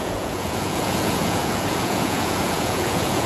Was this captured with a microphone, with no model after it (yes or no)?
no